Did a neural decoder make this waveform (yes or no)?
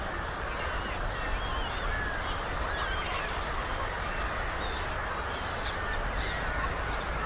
no